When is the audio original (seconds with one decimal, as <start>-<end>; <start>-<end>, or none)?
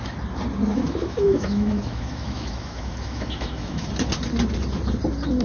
0.0-0.7; 3.9-5.4